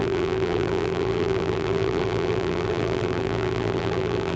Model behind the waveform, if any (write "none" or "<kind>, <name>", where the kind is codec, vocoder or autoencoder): vocoder, BigVGAN v2